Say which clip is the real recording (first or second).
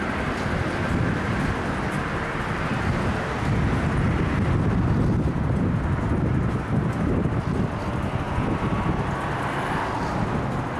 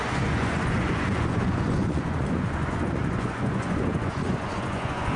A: first